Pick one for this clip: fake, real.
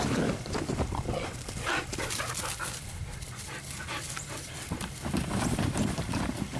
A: real